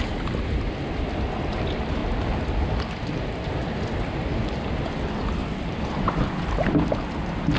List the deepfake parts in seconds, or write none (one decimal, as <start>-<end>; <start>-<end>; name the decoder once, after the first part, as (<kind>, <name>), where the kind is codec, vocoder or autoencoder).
2.0-3.8 (vocoder, BigVGAN v2); 5.4-6.4